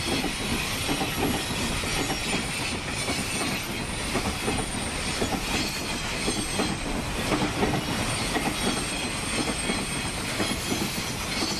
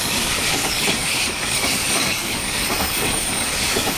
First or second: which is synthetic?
second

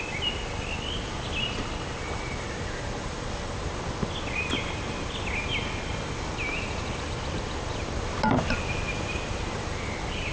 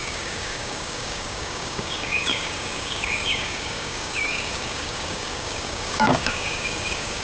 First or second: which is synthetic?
second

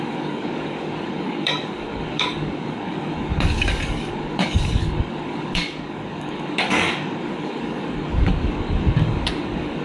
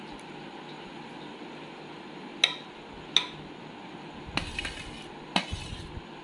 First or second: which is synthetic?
first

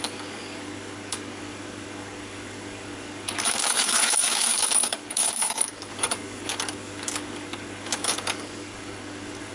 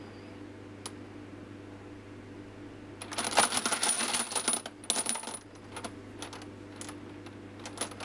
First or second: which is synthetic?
first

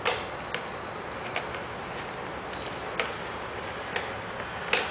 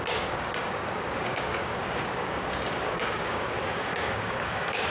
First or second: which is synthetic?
second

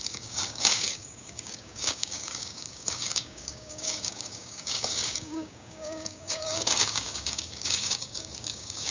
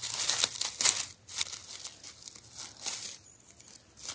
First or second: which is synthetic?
first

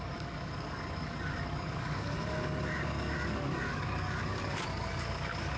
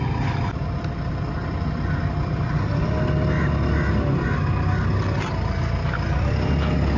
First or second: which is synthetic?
first